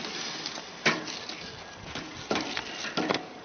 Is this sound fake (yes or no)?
no